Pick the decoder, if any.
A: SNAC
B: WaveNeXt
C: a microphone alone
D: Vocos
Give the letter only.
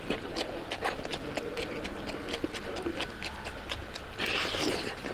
C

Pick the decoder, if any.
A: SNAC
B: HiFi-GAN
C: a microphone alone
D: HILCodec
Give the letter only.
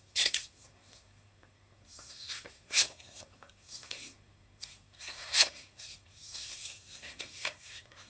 A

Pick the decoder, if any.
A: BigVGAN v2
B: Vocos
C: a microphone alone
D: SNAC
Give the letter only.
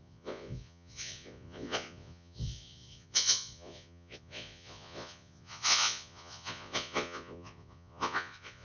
B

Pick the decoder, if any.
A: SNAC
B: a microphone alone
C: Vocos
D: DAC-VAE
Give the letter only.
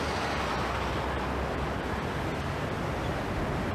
B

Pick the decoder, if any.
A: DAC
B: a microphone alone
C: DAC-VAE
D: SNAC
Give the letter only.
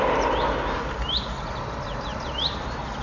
B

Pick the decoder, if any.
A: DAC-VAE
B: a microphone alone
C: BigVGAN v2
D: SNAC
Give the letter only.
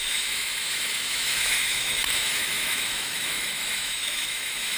A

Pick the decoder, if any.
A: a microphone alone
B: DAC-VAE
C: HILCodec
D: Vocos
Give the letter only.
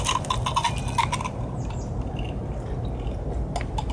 A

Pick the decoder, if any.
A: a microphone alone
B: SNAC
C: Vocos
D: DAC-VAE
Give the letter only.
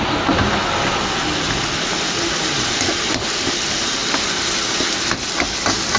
A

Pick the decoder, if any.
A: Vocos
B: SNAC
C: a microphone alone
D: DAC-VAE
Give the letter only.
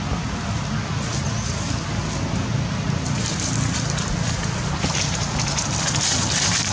C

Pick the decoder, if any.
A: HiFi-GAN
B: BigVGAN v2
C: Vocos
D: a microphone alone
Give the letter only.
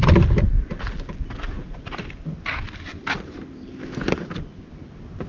D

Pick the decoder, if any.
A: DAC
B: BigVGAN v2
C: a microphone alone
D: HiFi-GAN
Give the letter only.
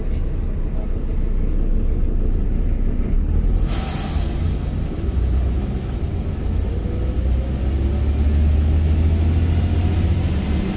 C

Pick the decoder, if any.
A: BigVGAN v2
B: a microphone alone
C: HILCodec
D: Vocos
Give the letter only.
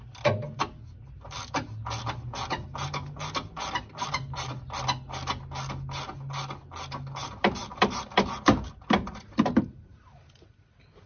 B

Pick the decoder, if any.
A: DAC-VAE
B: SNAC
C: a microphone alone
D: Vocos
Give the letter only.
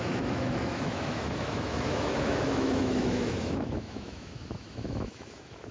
A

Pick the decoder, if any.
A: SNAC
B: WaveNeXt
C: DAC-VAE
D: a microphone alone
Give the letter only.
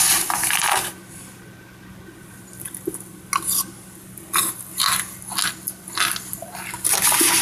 D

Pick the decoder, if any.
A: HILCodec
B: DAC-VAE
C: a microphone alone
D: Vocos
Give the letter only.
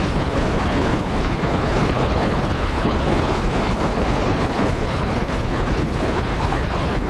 A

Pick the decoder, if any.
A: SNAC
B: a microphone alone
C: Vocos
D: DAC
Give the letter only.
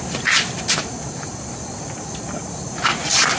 B